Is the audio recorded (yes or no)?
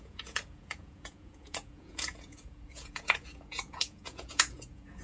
no